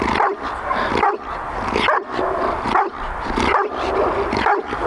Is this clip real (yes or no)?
yes